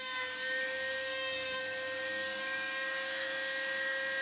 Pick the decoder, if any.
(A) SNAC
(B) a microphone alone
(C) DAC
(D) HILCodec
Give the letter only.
C